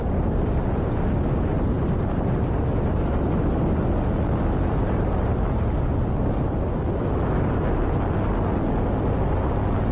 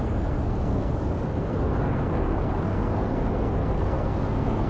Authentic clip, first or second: first